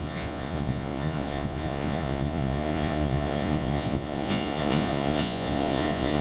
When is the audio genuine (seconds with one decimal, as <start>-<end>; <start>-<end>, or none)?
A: none

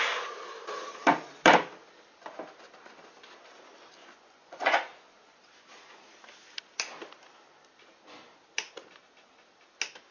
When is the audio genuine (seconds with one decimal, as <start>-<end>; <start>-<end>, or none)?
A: 0.0-4.0; 5.4-10.1

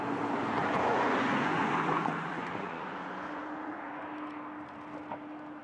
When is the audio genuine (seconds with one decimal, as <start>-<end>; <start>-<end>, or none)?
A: 0.0-0.6; 4.0-5.6

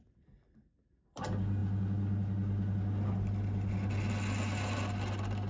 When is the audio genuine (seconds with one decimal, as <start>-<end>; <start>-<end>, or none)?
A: 0.0-5.5

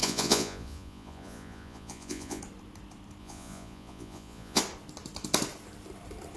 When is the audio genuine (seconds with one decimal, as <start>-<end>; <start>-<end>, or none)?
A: 2.4-3.2; 4.6-6.4

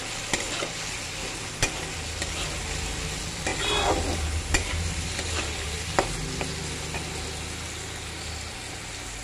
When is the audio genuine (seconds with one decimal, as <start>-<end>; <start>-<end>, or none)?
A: 0.0-9.2

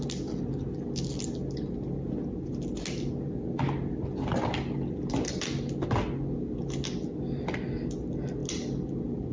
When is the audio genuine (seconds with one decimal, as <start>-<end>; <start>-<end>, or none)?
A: 0.0-9.3

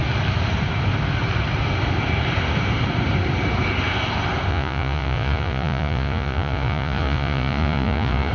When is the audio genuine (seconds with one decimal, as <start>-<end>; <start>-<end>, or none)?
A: 0.0-4.5